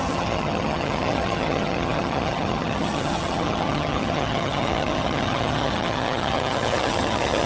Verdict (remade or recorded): remade